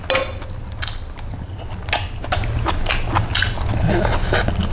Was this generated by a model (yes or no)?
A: no